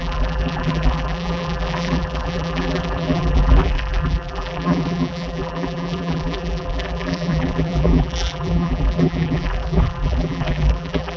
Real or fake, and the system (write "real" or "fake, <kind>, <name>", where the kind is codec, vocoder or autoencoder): fake, vocoder, BigVGAN v2